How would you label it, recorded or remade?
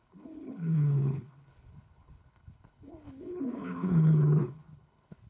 remade